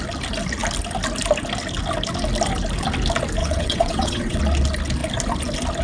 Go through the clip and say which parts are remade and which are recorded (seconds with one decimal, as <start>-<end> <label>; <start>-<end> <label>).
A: 0.0-3.4 recorded; 3.4-4.4 remade; 4.4-5.8 recorded

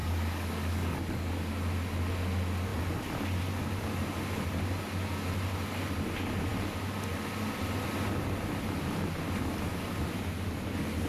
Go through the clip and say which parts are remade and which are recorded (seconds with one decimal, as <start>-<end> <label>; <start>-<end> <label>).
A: 0.0-1.5 remade; 1.5-11.1 recorded

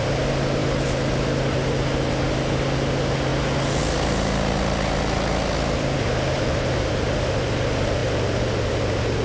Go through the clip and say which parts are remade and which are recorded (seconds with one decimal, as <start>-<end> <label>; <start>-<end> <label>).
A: 0.0-9.2 recorded

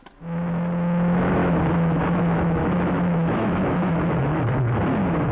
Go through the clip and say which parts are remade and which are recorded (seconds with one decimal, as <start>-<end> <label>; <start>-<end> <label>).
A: 0.0-1.4 recorded; 1.4-4.6 remade; 4.6-5.3 recorded

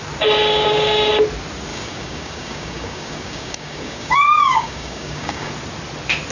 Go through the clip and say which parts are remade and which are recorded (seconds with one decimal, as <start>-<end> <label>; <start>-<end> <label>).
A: 0.0-0.5 recorded; 0.5-1.1 remade; 1.1-1.7 recorded; 1.7-5.5 remade; 5.5-6.3 recorded

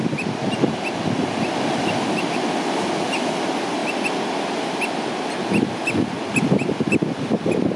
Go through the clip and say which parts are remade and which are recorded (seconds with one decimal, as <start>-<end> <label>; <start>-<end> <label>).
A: 0.0-7.8 recorded

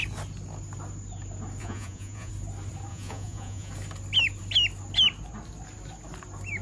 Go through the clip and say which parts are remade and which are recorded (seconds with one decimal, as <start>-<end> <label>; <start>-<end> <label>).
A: 0.0-1.6 recorded; 1.6-2.3 remade; 2.3-2.9 recorded; 2.9-3.7 remade; 3.7-6.6 recorded